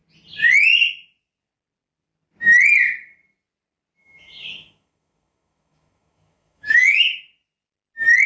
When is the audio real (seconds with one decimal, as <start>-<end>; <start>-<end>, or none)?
0.0-4.0; 7.1-8.3